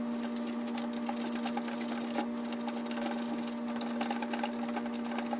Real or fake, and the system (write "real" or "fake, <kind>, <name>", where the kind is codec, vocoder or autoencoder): real